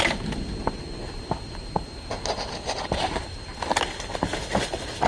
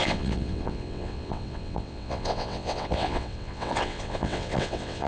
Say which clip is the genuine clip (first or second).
first